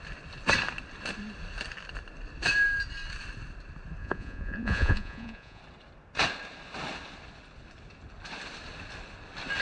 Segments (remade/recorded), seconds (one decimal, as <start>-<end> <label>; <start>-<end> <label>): 0.0-4.0 recorded; 4.0-5.6 remade; 5.6-9.6 recorded